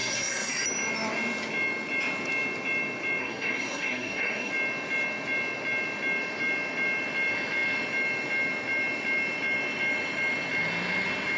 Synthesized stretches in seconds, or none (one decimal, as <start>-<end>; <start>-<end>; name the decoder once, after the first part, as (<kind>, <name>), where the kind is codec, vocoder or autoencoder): 0.0-0.5 (codec, SNAC); 3.2-4.5